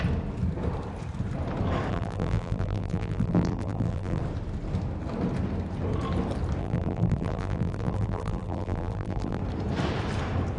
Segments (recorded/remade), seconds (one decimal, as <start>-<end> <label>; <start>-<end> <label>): 0.0-1.9 recorded; 1.9-4.2 remade; 4.2-6.6 recorded; 6.6-9.4 remade; 9.4-10.6 recorded